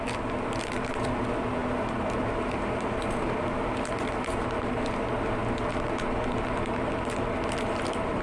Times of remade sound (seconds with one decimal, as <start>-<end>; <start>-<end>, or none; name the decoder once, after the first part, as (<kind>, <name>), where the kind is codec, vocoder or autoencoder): none